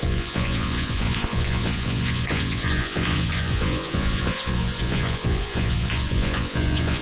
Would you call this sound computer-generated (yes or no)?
yes